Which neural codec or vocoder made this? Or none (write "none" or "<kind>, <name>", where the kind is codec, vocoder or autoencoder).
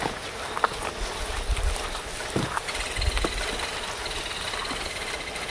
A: none